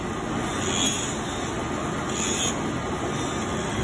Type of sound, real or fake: real